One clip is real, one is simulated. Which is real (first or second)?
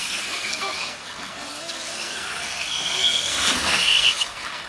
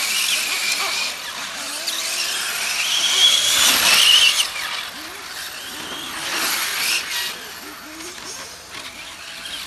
second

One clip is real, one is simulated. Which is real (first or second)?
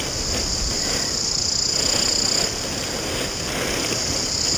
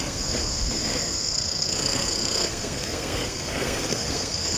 first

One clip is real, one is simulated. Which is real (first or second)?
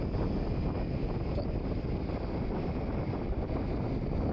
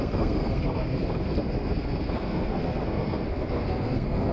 first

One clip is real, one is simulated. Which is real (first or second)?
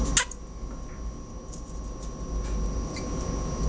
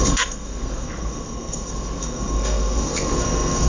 first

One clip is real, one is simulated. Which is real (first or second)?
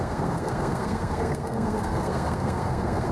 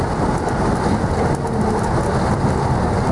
second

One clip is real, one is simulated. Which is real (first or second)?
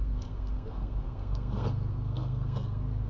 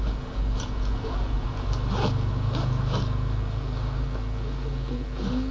second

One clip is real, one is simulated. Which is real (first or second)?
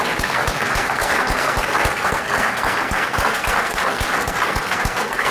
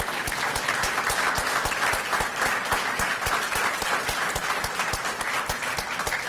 second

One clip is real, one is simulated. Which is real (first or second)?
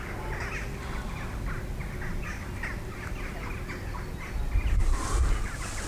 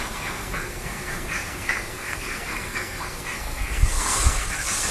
first